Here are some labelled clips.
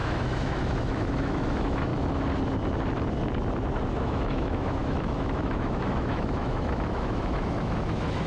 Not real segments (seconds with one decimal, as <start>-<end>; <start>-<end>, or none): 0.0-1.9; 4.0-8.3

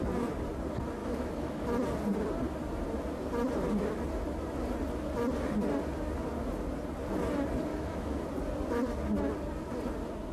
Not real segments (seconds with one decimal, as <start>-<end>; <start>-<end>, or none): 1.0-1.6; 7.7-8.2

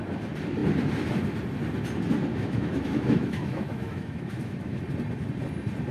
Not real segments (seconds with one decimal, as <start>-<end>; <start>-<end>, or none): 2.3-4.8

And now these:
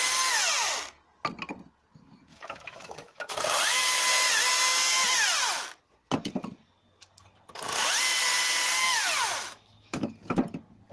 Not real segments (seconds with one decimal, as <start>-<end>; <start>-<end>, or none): 2.3-3.4; 9.4-10.1

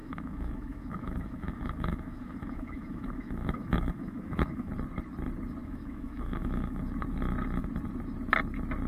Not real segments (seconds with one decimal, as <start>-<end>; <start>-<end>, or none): 0.0-4.7; 5.6-6.8

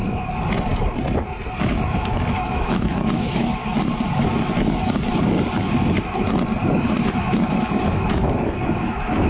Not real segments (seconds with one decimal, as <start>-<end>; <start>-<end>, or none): 1.6-3.6; 6.8-9.3

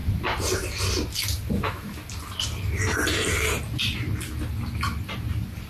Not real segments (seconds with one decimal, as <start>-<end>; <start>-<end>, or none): 1.5-2.0

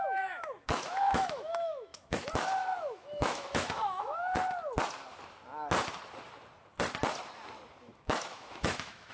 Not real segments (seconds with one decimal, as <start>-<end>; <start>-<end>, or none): 0.0-4.2; 7.8-9.1